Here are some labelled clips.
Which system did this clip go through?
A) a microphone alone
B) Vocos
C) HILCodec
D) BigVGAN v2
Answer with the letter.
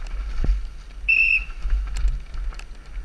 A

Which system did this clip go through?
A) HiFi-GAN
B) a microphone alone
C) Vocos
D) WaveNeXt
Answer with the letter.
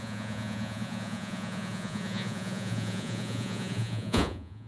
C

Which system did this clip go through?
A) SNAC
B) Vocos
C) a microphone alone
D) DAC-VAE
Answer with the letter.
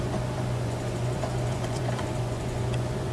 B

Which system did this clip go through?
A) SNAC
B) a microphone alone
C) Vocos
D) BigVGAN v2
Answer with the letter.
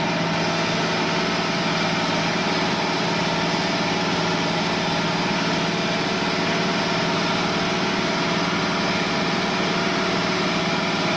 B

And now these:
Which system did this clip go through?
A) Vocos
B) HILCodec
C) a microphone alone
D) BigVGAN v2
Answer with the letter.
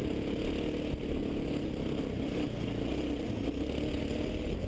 C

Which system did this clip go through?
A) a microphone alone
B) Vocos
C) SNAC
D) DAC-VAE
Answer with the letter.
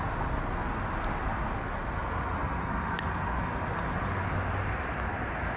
A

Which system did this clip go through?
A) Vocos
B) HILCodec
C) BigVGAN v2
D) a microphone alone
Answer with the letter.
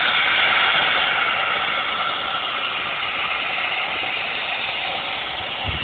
D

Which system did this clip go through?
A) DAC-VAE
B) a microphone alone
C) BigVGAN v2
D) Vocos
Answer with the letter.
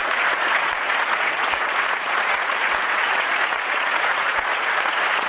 D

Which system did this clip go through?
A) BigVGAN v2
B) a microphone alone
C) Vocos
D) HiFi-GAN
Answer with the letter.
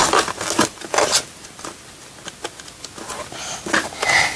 B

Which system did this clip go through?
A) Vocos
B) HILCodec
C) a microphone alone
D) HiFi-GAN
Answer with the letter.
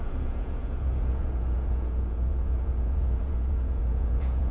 A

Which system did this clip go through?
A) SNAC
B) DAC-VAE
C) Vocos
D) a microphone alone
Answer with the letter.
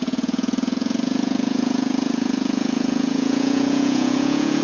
C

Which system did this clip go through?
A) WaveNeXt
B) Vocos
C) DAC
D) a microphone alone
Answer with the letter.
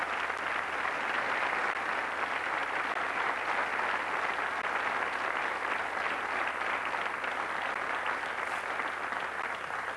D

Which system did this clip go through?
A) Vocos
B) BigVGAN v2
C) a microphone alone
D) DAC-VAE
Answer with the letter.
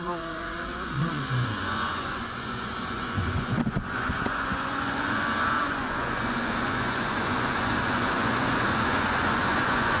A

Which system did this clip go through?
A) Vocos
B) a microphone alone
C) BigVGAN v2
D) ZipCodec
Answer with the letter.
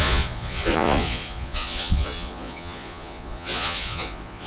A